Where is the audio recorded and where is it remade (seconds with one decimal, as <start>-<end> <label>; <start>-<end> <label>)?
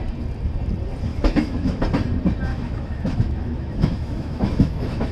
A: 0.0-1.1 recorded; 1.1-1.8 remade; 1.8-2.5 recorded; 2.5-5.1 remade